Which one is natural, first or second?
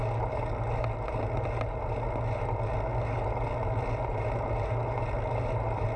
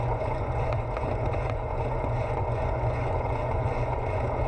first